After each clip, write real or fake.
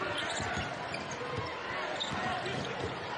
real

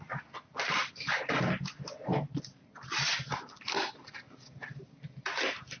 real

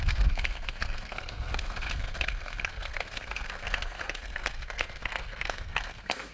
fake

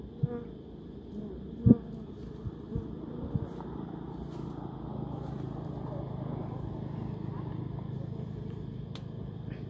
real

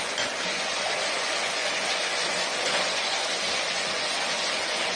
fake